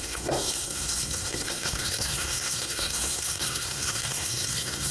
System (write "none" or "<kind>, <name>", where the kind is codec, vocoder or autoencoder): codec, SNAC